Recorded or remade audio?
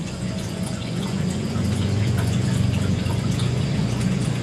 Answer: remade